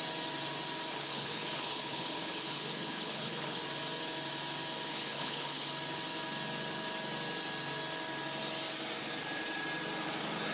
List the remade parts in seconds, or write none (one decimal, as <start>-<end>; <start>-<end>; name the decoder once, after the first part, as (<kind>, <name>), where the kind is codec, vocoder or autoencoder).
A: 0.9-3.6 (codec, HILCodec); 4.9-5.7